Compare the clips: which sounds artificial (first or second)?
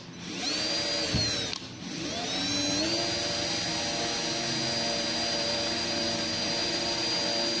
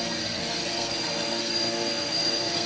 second